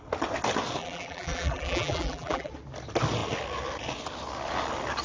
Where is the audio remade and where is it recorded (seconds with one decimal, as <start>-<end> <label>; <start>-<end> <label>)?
0.0-0.8 recorded; 0.8-2.5 remade; 2.5-5.0 recorded